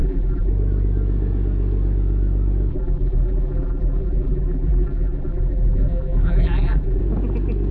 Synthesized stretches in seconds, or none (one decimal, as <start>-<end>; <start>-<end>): 0.0-0.5; 2.7-7.0

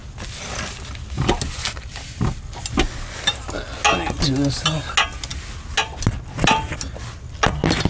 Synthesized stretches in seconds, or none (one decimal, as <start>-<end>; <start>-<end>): none